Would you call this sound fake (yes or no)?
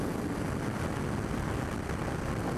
no